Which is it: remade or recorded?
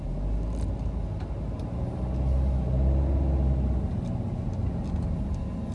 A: recorded